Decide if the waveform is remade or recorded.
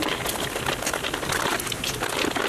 recorded